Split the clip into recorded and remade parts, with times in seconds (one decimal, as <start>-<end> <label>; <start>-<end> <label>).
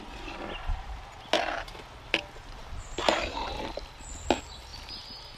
0.0-5.4 recorded